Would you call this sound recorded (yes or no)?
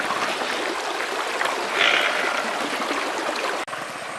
yes